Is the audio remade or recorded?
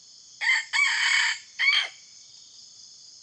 remade